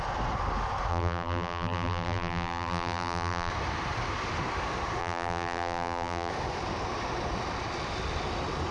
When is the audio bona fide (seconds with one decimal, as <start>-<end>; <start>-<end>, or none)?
0.0-0.9; 3.5-5.0; 6.3-8.7